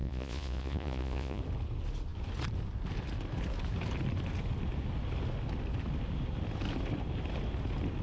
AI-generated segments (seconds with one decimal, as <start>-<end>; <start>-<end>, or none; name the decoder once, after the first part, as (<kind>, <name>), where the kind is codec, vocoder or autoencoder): 0.0-1.4 (vocoder, Vocos)